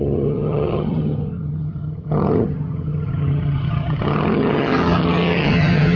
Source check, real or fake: fake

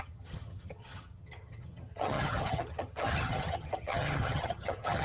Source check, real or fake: fake